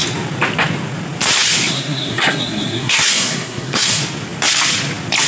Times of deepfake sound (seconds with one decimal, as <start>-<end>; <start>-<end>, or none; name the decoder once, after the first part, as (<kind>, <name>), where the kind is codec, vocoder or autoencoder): 1.7-4.0 (codec, SNAC)